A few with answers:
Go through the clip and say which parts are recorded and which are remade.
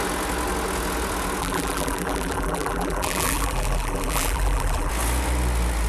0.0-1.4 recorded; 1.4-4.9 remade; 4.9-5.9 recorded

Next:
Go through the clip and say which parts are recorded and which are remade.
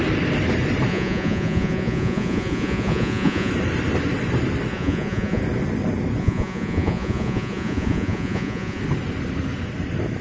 0.0-0.9 recorded; 0.9-3.5 remade; 3.5-4.7 recorded; 4.7-5.4 remade; 5.4-6.2 recorded; 6.2-8.8 remade; 8.8-10.2 recorded